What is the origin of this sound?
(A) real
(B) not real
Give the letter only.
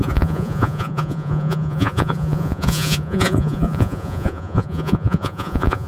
B